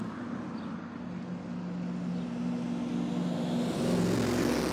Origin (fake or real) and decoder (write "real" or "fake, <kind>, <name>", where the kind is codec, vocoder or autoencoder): real